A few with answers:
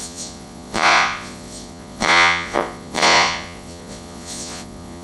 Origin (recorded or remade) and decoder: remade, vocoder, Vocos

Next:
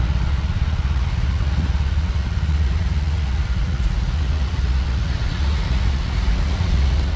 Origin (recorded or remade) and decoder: remade, vocoder, Vocos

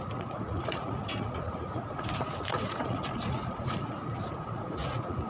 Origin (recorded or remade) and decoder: remade, vocoder, Vocos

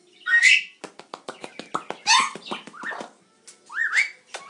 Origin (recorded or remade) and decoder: recorded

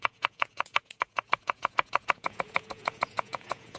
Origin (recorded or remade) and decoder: remade, vocoder, Vocos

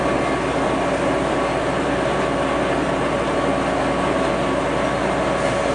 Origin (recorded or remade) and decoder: recorded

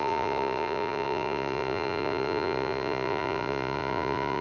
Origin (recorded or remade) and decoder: remade, vocoder, Vocos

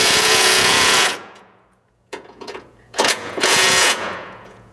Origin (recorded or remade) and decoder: remade, vocoder, Vocos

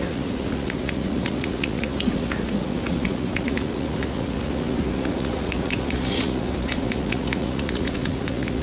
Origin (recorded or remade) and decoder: remade, vocoder, Vocos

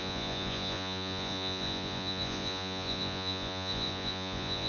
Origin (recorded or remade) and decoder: remade, vocoder, Vocos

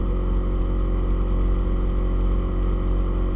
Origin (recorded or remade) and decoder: recorded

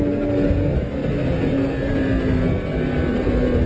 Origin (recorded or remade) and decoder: recorded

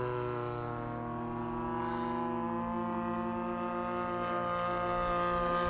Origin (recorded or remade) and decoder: recorded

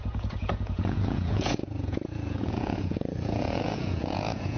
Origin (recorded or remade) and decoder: remade, vocoder, Vocos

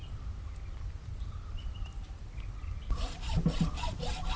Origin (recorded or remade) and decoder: recorded